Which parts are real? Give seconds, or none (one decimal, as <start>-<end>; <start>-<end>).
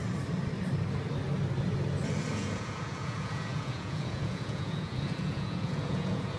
0.0-2.3